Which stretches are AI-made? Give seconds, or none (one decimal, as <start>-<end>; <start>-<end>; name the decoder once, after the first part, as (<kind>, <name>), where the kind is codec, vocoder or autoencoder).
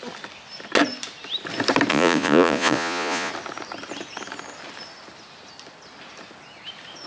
1.9-3.3 (vocoder, Vocos)